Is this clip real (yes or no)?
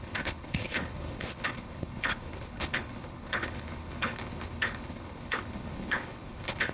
no